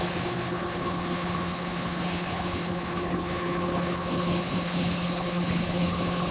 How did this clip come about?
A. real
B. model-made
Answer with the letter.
B